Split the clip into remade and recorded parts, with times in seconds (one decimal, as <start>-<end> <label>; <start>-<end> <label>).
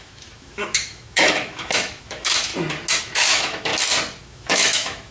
0.0-2.5 remade; 2.5-3.0 recorded; 3.0-3.7 remade; 3.7-4.2 recorded; 4.2-5.1 remade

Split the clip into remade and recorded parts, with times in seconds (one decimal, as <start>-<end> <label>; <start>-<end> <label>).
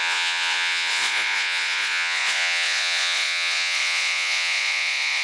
0.0-5.2 remade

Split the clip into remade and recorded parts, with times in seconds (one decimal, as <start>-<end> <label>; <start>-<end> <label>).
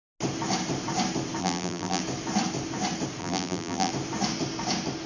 0.0-1.4 recorded; 1.4-2.0 remade; 2.0-3.2 recorded; 3.2-3.9 remade; 3.9-5.1 recorded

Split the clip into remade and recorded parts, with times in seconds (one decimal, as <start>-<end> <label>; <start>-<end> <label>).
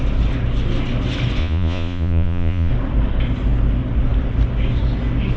0.0-1.4 recorded; 1.4-2.7 remade; 2.7-5.4 recorded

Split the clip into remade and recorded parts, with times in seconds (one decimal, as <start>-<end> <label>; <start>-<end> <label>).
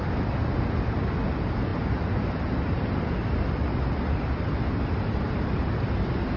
0.0-6.4 recorded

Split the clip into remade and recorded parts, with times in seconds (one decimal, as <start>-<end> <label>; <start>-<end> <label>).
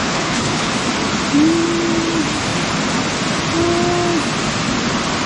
0.0-0.7 remade; 0.7-5.3 recorded